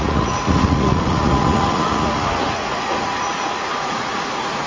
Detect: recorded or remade remade